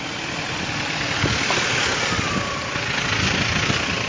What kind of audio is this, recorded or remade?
recorded